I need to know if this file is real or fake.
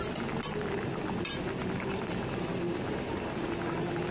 real